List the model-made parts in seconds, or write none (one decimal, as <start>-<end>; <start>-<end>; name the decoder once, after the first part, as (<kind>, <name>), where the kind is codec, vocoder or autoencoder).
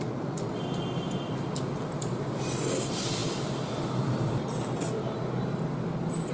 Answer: none